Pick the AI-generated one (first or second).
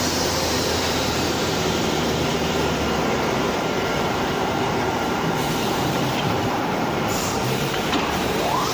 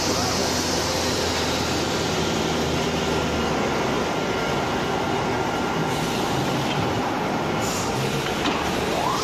first